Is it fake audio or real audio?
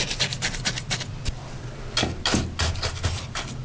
real